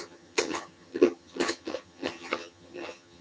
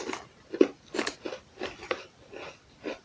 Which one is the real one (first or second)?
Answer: second